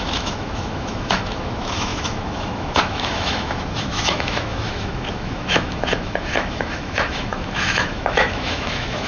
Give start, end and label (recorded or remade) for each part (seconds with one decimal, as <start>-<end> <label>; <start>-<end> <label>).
0.0-9.1 remade